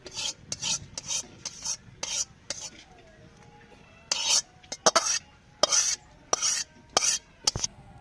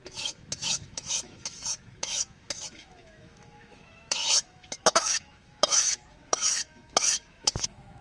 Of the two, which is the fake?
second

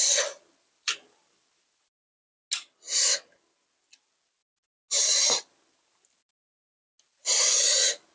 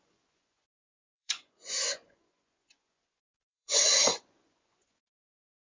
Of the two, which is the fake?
second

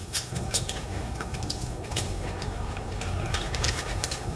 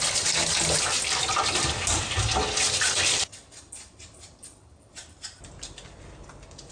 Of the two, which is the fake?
first